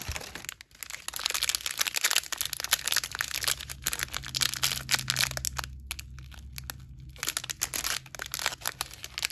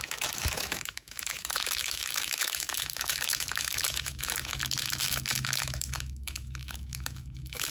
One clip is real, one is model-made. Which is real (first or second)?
first